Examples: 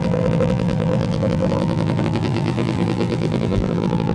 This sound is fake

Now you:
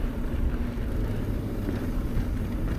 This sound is real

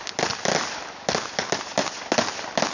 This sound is real